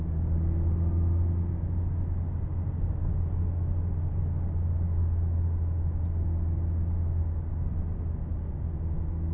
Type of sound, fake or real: real